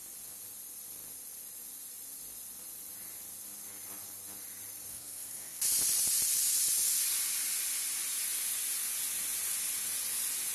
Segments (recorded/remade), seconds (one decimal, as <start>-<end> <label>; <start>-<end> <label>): 0.0-4.9 recorded; 4.9-5.6 remade; 5.6-10.5 recorded